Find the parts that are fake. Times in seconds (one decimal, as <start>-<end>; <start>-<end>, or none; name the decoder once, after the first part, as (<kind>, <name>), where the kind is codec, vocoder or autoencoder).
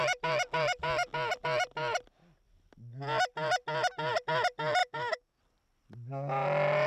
4.8-5.4 (autoencoder, DAC-VAE)